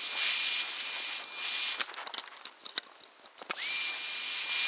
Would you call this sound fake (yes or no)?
no